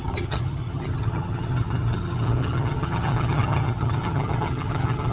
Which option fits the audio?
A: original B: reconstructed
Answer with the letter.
B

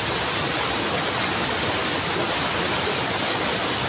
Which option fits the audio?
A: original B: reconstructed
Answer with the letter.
A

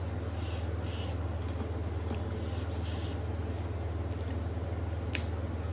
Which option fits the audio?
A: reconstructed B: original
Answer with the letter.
B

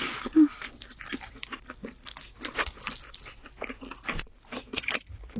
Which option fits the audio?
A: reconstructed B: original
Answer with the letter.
B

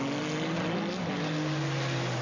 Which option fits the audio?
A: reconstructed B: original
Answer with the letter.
B